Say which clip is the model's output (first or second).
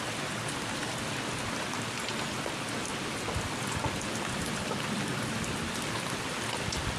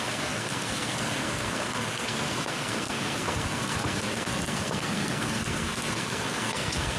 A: second